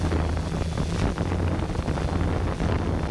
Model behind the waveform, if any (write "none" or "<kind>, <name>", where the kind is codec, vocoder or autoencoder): none